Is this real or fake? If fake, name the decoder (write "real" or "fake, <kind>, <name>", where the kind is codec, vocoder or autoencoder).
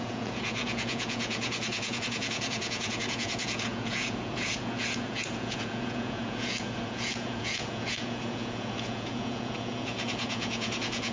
fake, vocoder, Vocos